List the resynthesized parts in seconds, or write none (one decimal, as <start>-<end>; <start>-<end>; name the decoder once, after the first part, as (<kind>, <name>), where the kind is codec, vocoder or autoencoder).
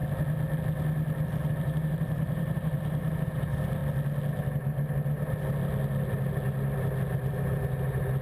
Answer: 1.5-3.8 (vocoder, BigVGAN v2)